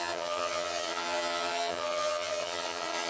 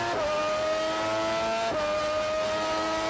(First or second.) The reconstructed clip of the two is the first